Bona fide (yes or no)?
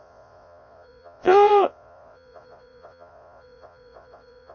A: no